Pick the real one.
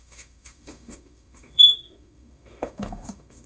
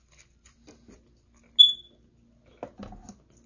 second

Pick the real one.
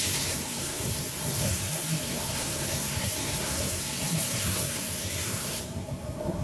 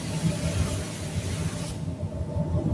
second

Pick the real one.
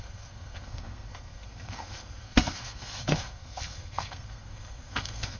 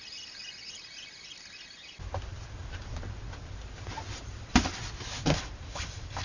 second